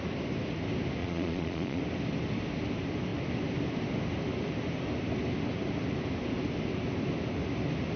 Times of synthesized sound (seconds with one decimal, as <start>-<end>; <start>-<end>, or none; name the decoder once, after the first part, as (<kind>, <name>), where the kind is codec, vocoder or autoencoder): 1.0-1.8 (vocoder, Vocos)